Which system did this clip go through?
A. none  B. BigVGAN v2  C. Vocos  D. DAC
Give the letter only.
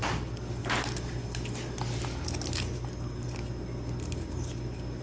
A